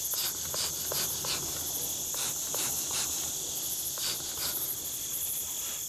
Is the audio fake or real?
real